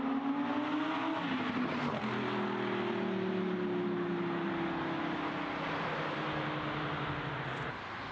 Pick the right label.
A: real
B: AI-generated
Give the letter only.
A